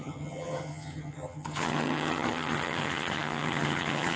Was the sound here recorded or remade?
remade